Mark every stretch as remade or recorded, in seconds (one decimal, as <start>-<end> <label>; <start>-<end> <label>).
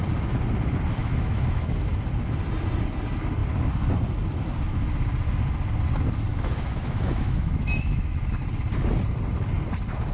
0.0-1.0 recorded; 1.0-1.7 remade; 1.7-6.3 recorded; 6.3-8.3 remade; 8.3-10.1 recorded